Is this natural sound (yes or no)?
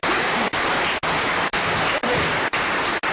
yes